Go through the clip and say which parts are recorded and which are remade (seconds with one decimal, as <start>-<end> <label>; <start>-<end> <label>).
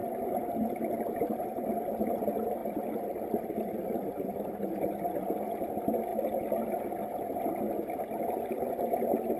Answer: 0.0-2.0 remade; 2.0-2.6 recorded; 2.6-5.2 remade; 5.2-9.4 recorded